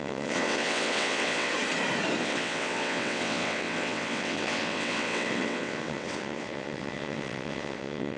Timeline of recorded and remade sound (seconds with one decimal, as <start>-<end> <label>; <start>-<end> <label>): 0.0-1.5 remade; 1.5-2.2 recorded; 2.2-8.2 remade